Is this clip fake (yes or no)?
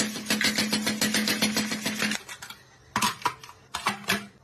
no